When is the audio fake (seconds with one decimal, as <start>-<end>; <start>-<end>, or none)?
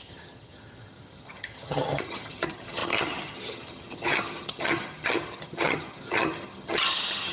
0.0-7.3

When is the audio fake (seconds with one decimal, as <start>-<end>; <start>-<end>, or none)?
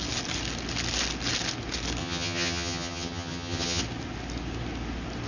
2.0-3.8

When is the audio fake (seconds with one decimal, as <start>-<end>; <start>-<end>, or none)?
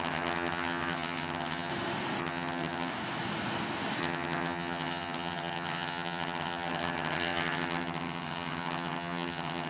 0.0-1.7; 2.2-2.9; 4.0-9.7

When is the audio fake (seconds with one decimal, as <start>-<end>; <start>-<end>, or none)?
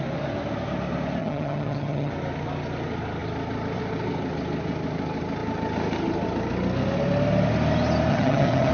1.2-2.1; 8.1-8.7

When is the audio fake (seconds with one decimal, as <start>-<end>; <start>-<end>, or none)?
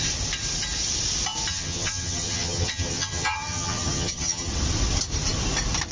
1.5-4.5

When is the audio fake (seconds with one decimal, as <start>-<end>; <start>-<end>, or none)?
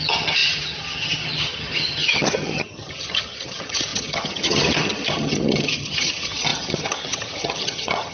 0.0-8.1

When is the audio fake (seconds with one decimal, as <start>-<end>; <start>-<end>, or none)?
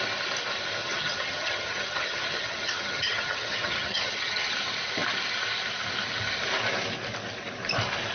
0.8-4.5